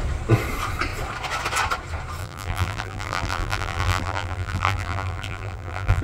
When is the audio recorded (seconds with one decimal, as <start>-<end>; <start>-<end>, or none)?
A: 0.0-2.2